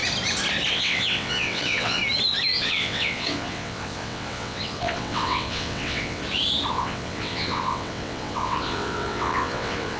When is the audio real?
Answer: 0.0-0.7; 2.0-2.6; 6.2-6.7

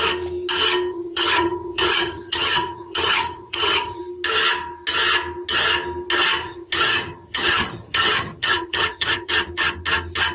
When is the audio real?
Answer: 0.0-0.9; 4.0-6.4; 9.3-10.3

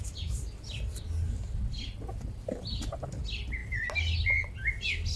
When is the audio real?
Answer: 0.0-5.2

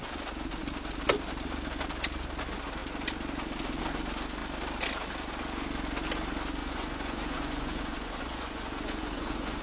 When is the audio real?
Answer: 0.0-6.6